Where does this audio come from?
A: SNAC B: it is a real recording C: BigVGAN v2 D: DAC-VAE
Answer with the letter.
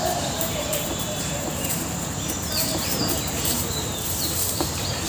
C